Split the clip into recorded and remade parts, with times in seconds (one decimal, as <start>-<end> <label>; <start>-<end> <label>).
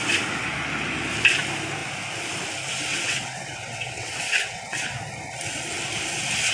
0.0-2.9 recorded; 2.9-5.0 remade; 5.0-6.5 recorded